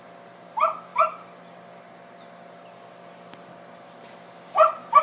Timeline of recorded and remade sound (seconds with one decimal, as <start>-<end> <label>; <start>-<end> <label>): 0.0-0.9 recorded; 0.9-3.9 remade; 3.9-5.0 recorded